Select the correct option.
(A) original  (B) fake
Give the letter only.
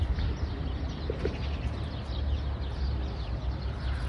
A